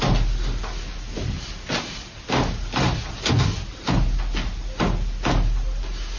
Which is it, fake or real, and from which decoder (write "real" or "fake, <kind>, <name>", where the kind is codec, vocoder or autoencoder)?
real